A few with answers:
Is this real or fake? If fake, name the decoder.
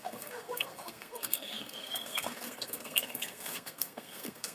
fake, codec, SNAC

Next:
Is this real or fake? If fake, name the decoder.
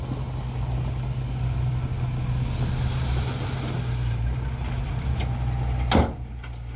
real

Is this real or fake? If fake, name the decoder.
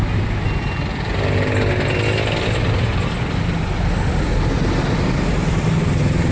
real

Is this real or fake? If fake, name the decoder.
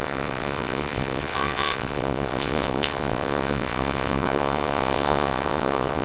fake, vocoder, WaveNeXt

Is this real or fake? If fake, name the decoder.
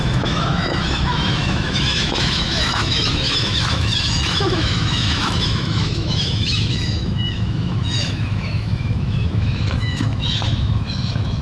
fake, autoencoder, DAC-VAE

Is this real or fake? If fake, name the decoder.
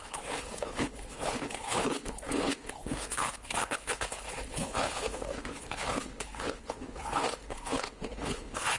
fake, codec, HILCodec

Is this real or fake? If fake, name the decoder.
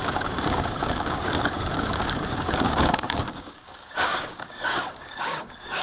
fake, codec, DAC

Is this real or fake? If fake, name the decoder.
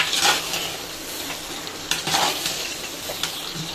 fake, vocoder, BigVGAN v2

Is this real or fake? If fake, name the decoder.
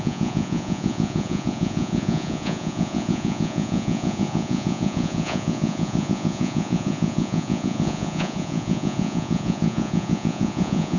fake, vocoder, Vocos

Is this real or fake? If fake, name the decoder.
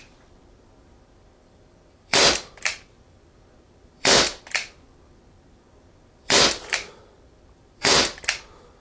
fake, vocoder, BigVGAN v2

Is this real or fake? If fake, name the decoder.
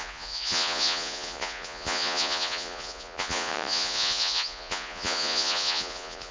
fake, vocoder, Vocos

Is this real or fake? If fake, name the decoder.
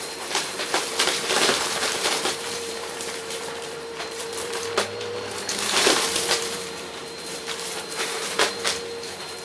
fake, vocoder, BigVGAN v2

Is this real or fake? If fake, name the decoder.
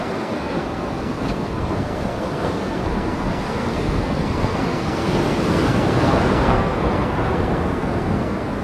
fake, codec, SNAC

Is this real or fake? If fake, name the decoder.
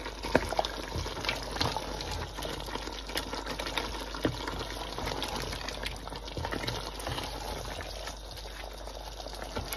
real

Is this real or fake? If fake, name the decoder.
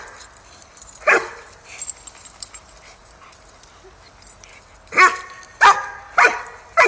real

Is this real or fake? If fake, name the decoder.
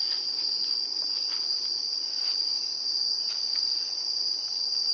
real